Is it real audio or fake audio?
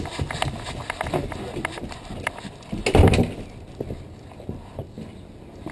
real